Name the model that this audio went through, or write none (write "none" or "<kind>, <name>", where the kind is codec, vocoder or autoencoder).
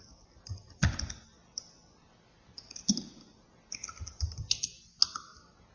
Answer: none